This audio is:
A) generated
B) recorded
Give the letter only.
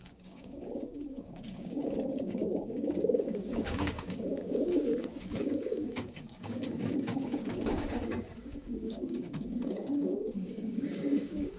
A